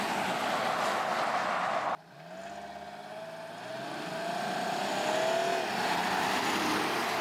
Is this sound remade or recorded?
recorded